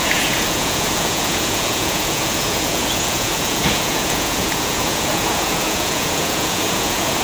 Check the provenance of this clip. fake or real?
fake